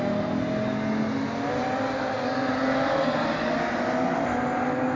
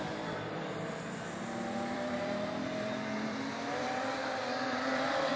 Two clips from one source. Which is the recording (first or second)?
first